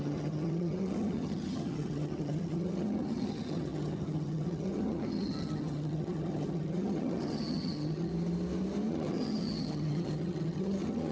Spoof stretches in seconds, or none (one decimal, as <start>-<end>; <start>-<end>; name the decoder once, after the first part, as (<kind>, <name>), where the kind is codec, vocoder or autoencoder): 0.0-8.1 (vocoder, HiFi-GAN); 8.9-11.1